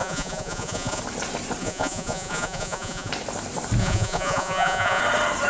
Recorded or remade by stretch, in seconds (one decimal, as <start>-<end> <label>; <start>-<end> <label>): 0.0-1.0 remade; 1.0-1.6 recorded; 1.6-3.1 remade; 3.1-3.8 recorded; 3.8-5.0 remade; 5.0-5.5 recorded